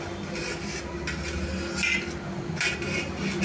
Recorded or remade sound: recorded